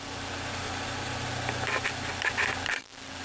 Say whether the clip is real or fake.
fake